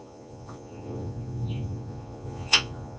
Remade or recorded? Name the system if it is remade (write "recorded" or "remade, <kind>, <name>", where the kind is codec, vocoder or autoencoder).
remade, vocoder, Vocos